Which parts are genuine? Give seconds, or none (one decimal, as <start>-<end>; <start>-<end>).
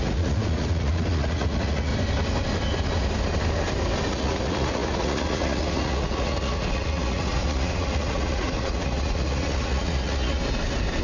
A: 1.9-4.1; 10.4-11.0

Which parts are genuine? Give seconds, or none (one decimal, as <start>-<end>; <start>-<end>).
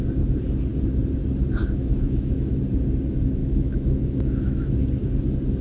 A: 0.0-1.6; 2.6-3.4; 4.7-5.6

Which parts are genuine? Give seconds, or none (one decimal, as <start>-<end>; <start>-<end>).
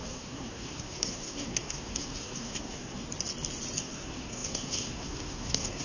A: 3.0-3.8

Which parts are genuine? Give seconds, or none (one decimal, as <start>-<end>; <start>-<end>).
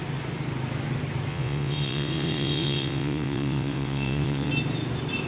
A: 0.0-1.3; 4.5-5.3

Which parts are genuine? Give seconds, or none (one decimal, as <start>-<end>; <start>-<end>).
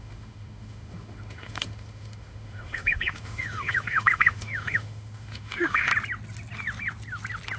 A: 5.9-7.6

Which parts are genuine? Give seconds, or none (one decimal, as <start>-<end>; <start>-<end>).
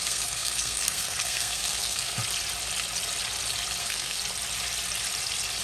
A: 2.2-3.8; 4.2-5.6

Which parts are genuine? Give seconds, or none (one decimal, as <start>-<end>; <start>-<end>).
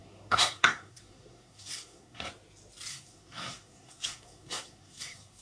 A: 2.3-2.9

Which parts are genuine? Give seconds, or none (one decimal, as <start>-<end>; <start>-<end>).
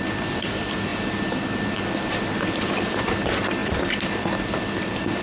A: 0.0-3.6; 4.8-5.2